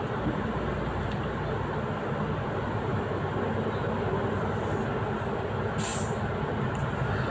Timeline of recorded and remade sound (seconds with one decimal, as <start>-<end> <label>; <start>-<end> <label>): 0.0-7.3 recorded